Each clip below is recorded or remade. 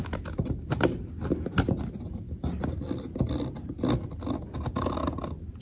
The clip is recorded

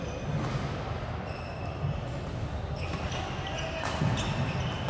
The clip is recorded